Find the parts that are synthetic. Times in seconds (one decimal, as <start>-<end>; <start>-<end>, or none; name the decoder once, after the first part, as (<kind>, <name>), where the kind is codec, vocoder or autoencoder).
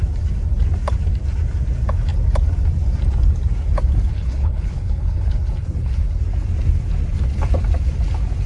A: 4.1-6.2 (codec, HILCodec)